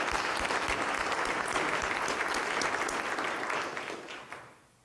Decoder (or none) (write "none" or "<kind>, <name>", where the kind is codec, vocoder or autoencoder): none